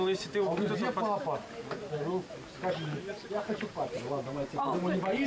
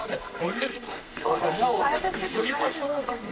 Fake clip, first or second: second